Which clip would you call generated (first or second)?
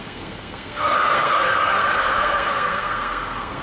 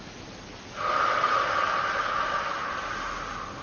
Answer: first